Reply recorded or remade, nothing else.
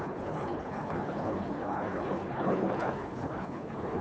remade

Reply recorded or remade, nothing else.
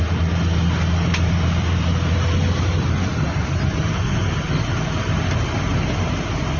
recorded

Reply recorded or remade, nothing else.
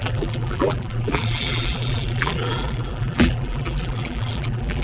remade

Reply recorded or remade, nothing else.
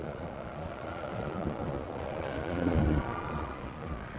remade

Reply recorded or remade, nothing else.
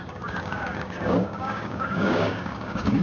remade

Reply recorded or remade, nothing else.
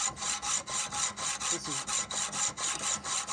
recorded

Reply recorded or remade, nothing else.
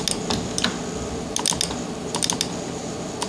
recorded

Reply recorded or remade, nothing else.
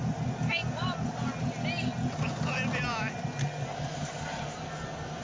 recorded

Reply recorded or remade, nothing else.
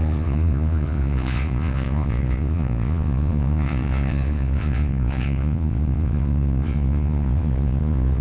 remade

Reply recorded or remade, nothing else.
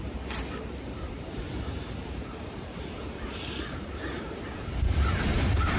remade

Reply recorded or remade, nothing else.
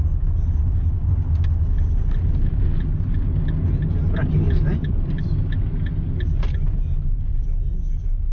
recorded